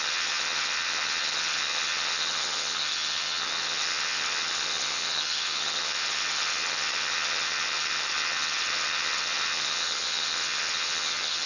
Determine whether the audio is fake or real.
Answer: fake